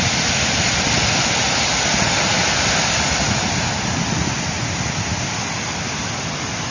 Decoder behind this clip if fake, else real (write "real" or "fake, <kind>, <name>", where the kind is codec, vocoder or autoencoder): real